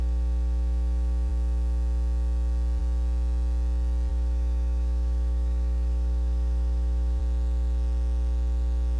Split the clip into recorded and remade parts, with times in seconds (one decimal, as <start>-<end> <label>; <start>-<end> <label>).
0.0-4.1 recorded; 4.1-7.2 remade; 7.2-9.0 recorded